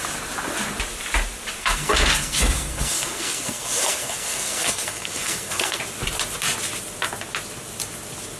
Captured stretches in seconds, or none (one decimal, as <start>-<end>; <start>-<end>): 0.0-1.6; 5.8-8.4